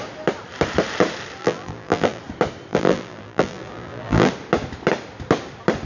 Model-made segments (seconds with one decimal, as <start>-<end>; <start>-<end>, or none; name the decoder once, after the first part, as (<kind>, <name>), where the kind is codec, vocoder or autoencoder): 1.4-2.2 (vocoder, BigVGAN v2); 2.7-4.3